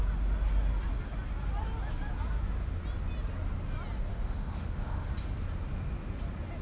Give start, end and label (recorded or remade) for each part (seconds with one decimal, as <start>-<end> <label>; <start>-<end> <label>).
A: 0.0-4.1 recorded; 4.1-5.1 remade; 5.1-6.6 recorded

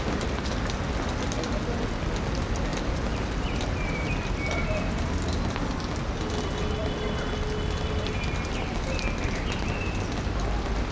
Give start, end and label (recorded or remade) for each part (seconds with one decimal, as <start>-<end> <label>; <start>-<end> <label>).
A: 0.0-2.7 recorded; 2.7-4.0 remade; 4.0-10.9 recorded